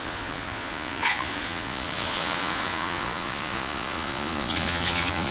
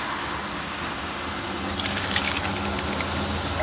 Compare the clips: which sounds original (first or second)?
second